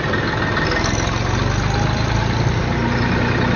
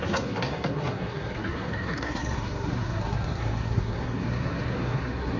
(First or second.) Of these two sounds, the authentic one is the first